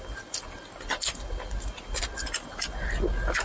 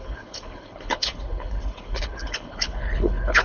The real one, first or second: first